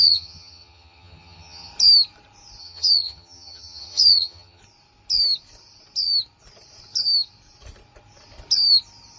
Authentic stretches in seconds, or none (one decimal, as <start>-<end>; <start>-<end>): 1.7-2.6; 4.6-9.2